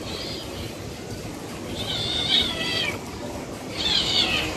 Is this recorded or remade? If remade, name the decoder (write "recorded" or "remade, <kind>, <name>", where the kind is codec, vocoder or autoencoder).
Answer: recorded